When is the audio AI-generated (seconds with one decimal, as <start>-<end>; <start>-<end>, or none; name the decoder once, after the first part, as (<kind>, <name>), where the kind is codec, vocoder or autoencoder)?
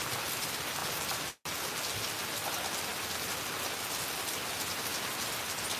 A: none